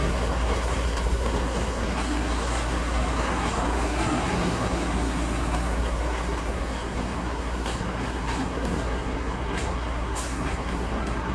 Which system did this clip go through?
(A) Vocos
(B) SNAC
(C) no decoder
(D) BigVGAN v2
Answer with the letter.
B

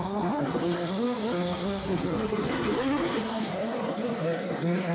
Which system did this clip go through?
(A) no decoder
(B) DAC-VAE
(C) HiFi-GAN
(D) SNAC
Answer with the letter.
D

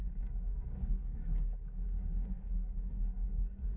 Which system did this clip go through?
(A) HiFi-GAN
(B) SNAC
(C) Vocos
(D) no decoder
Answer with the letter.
B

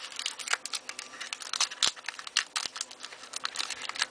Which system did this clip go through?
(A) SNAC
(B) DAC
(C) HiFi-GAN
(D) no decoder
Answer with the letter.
D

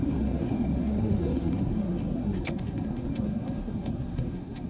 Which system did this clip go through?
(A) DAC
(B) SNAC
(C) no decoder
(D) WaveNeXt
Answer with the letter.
B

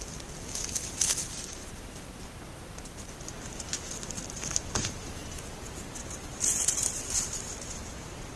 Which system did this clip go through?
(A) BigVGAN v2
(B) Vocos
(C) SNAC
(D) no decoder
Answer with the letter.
D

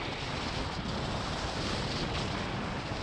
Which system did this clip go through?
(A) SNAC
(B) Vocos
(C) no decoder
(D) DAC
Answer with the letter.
C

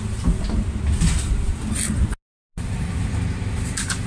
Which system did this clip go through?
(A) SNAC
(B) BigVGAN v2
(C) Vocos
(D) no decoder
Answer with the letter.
D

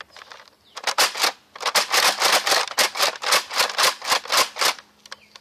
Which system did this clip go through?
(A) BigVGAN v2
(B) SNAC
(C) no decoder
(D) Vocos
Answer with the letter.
C